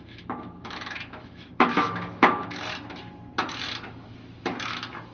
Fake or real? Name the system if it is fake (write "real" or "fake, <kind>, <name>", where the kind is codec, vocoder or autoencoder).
fake, autoencoder, DAC-VAE